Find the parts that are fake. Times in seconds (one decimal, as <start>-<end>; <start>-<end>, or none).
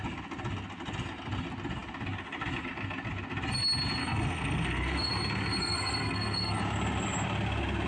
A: 4.0-5.1; 5.6-6.6